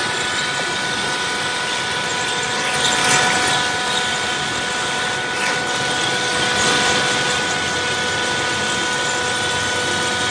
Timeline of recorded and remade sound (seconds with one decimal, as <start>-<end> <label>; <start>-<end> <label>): 0.0-10.3 recorded